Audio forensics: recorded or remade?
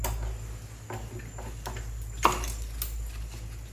recorded